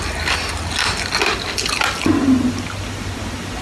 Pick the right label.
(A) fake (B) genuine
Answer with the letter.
B